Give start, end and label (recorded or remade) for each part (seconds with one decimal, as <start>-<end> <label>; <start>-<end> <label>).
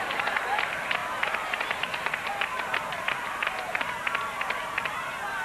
0.0-1.0 recorded; 1.0-3.8 remade; 3.8-5.4 recorded